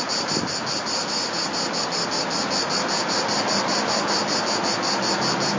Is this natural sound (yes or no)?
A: yes